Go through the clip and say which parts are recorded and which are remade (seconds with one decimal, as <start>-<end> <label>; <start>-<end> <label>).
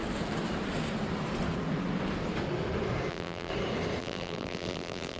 0.0-3.1 recorded; 3.1-3.5 remade; 3.5-4.0 recorded; 4.0-5.2 remade